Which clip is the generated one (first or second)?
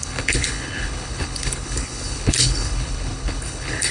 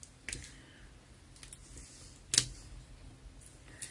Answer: first